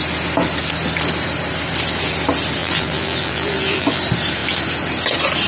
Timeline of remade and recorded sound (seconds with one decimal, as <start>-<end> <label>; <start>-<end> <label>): 0.0-2.6 recorded; 2.6-4.0 remade; 4.0-5.5 recorded